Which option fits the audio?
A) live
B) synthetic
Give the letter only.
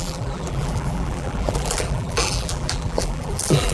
B